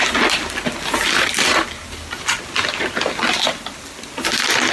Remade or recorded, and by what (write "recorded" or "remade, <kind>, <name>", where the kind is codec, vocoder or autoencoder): recorded